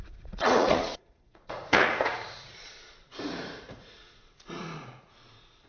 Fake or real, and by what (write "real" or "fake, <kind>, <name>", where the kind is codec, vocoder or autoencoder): fake, vocoder, Vocos